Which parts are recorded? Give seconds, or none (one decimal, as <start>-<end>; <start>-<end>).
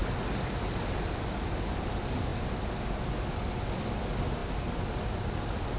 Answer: 0.0-5.8